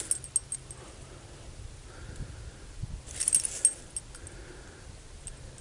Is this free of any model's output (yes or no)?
yes